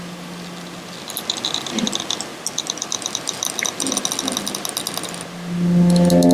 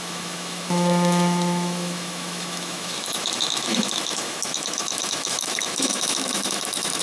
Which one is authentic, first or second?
first